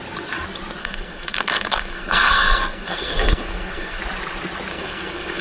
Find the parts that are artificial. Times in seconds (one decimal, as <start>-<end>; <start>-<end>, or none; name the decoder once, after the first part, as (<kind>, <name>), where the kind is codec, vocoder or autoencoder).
0.8-4.0 (codec, SNAC); 4.7-5.4